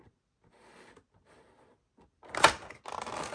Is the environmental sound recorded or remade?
recorded